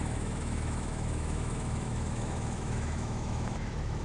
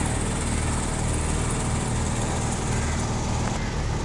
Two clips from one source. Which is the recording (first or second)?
second